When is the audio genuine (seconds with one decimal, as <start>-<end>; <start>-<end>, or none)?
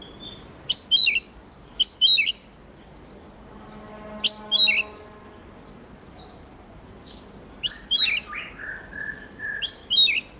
0.0-10.4